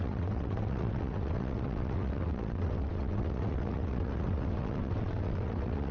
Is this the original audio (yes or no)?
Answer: no